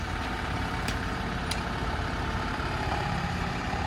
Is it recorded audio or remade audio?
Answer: remade